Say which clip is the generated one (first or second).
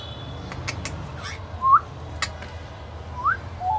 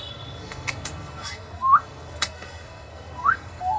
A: second